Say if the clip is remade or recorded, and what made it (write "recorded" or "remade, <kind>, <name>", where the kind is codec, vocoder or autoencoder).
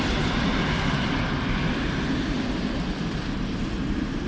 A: recorded